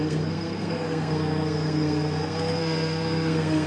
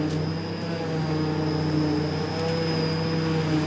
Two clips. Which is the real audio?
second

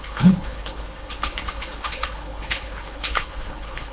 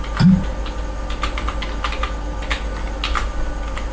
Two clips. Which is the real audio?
second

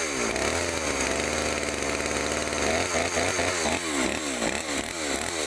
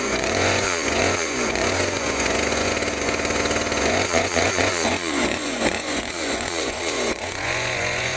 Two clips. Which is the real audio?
first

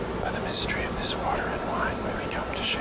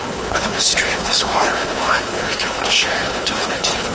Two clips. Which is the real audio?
first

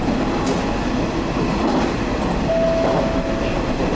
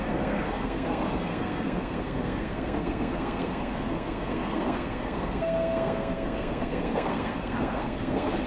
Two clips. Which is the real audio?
first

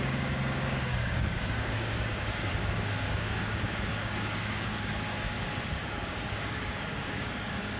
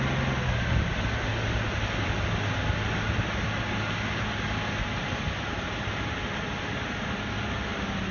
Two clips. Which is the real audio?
second